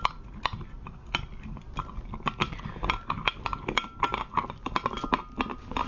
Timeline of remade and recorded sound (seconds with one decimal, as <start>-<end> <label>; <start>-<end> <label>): 0.0-5.9 recorded